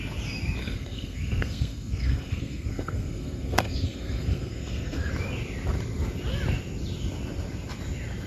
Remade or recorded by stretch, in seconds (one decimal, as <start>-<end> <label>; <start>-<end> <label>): 0.0-0.6 recorded; 0.6-5.1 remade; 5.1-8.3 recorded